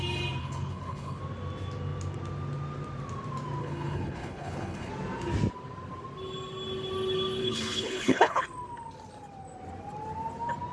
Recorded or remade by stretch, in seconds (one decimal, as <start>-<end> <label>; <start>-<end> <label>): 0.0-0.4 recorded; 0.4-1.2 remade; 1.2-3.6 recorded; 3.6-4.9 remade; 4.9-7.4 recorded; 7.4-8.4 remade; 8.4-10.7 recorded